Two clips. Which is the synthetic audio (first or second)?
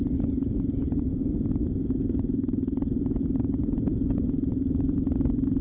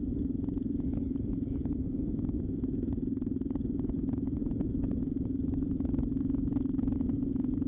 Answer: second